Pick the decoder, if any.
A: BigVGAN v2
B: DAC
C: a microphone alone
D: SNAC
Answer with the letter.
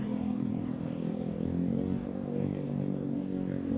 B